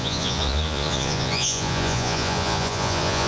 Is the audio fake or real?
fake